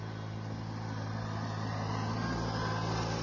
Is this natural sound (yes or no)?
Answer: yes